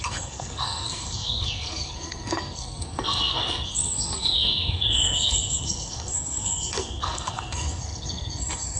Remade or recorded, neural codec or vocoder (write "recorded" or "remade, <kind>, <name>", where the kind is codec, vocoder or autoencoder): remade, codec, SNAC